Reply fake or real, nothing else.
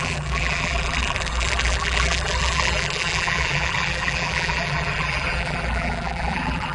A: fake